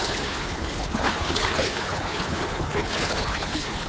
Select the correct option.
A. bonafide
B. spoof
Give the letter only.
B